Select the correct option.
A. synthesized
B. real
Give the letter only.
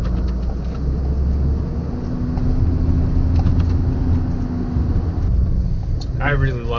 B